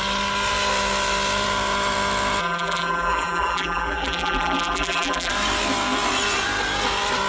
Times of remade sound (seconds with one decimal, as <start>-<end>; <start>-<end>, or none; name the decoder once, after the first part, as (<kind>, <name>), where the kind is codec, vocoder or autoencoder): 2.4-5.3 (vocoder, BigVGAN v2)